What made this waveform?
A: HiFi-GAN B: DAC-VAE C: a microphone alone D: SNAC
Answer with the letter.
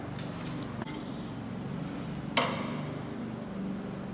C